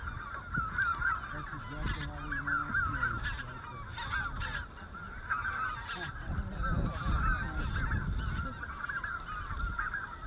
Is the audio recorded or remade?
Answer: recorded